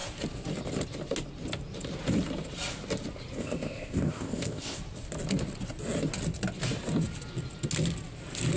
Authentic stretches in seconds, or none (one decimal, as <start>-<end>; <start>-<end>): 0.0-3.4; 4.8-8.6